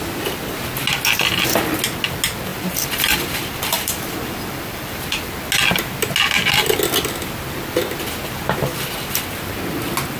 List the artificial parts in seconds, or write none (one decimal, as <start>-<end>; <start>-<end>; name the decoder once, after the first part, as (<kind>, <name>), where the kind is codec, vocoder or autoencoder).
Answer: 2.5-5.0 (vocoder, BigVGAN v2)